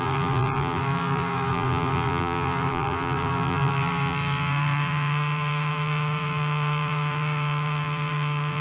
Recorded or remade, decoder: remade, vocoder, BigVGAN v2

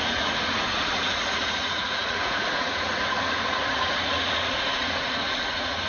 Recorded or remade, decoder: remade, vocoder, Vocos